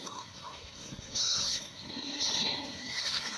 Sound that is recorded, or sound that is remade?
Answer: remade